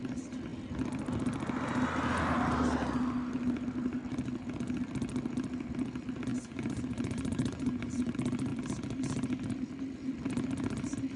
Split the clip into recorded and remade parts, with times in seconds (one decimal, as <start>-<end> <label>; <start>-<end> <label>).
0.0-6.3 recorded; 6.3-8.1 remade; 8.1-11.2 recorded

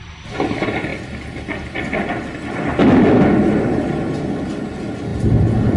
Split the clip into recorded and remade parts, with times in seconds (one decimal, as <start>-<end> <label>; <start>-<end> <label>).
0.0-5.8 recorded

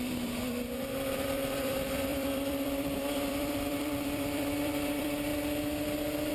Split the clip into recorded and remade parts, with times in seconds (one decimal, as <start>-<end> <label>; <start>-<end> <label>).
0.0-5.3 remade; 5.3-6.3 recorded

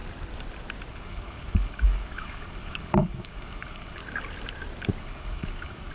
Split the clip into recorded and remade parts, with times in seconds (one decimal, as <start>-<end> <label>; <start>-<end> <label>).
0.0-0.9 recorded; 0.9-4.0 remade; 4.0-5.0 recorded; 5.0-5.9 remade

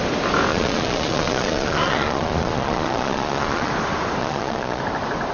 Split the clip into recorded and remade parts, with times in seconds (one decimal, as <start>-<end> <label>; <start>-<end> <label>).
0.0-0.5 recorded; 0.5-3.7 remade; 3.7-4.2 recorded; 4.2-4.8 remade; 4.8-5.3 recorded

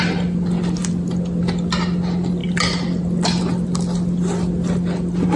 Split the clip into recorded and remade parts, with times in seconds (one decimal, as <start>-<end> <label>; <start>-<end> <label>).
0.0-5.4 recorded

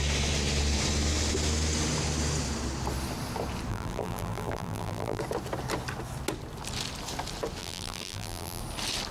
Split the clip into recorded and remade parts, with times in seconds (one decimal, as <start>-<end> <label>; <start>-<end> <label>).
0.0-3.7 recorded; 3.7-5.2 remade; 5.2-7.6 recorded; 7.6-8.6 remade; 8.6-9.1 recorded